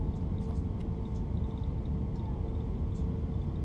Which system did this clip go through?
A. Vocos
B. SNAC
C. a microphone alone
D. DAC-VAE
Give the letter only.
C